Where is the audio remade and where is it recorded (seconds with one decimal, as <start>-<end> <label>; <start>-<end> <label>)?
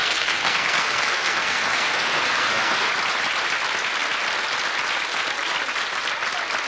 0.0-2.9 remade; 2.9-6.7 recorded